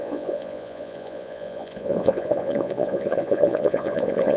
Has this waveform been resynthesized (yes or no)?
yes